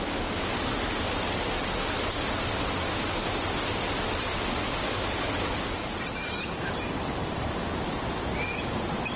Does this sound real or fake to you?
real